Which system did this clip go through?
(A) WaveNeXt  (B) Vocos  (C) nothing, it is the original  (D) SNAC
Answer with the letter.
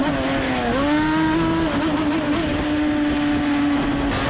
C